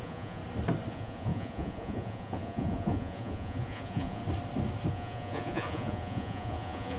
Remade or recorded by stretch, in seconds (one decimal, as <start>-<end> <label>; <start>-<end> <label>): 0.0-0.4 remade; 0.4-0.9 recorded; 0.9-4.2 remade; 4.2-4.9 recorded; 4.9-7.0 remade